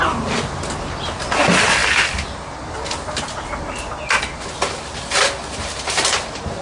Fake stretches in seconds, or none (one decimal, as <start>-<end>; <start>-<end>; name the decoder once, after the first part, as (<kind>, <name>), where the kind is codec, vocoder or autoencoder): none